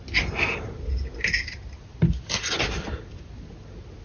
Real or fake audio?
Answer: real